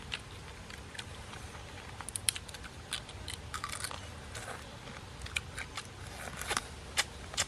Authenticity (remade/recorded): recorded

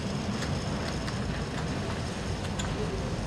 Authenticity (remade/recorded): recorded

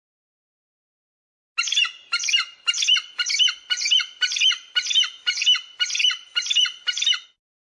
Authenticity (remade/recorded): recorded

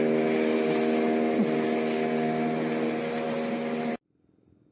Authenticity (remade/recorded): recorded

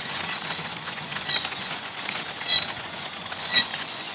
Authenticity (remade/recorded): remade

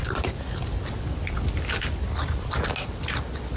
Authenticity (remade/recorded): recorded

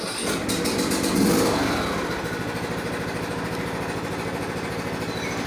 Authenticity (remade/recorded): recorded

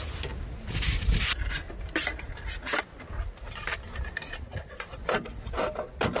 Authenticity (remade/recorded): recorded